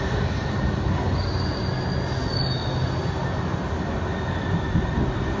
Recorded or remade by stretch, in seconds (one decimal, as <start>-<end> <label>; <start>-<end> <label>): 0.0-5.4 recorded